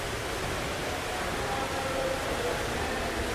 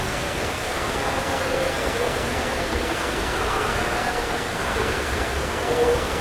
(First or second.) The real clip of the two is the first